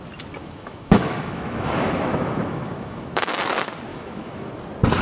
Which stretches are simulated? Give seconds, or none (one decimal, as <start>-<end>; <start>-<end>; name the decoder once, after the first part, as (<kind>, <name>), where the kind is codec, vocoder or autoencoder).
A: 0.4-3.4 (autoencoder, DAC-VAE); 3.9-4.5